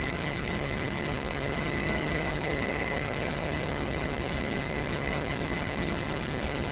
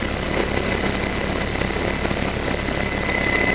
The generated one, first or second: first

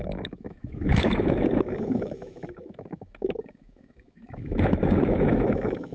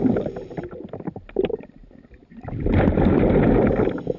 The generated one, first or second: first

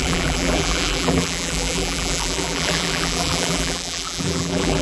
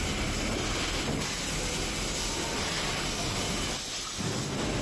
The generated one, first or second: first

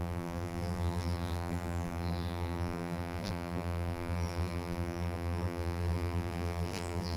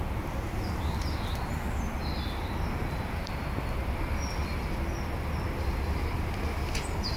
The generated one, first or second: first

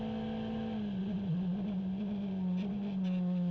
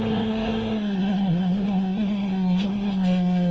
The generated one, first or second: second